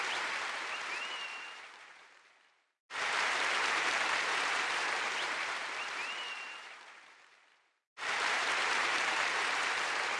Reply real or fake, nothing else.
fake